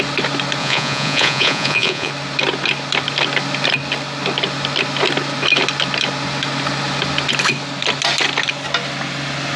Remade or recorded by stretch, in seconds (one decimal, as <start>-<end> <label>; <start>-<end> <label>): 0.0-0.6 recorded; 0.6-2.1 remade; 2.1-9.6 recorded